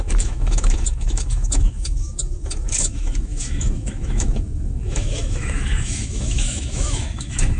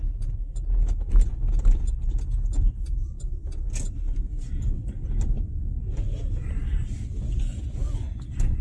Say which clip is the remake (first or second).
first